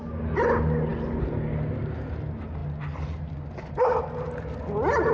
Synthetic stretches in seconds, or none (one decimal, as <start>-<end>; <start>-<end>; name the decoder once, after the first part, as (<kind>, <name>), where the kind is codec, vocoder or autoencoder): none